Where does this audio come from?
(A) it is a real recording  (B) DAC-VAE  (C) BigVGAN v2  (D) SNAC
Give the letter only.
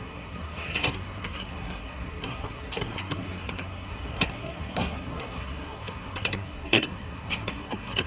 D